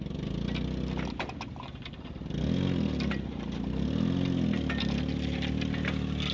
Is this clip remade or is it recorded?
recorded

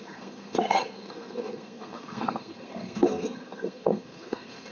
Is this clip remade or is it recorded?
remade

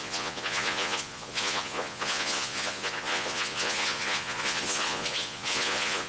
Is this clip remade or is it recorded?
remade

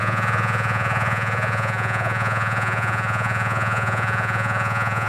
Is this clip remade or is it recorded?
remade